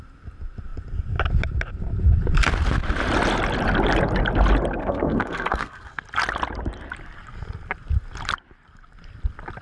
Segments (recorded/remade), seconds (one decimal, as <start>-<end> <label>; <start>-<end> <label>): 0.0-4.8 recorded; 4.8-6.0 remade; 6.0-9.6 recorded